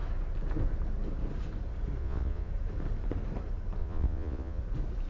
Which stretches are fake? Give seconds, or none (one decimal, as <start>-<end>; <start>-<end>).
2.0-2.5; 3.8-4.6